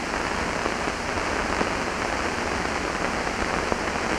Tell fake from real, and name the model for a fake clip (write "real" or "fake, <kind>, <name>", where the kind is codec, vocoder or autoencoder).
real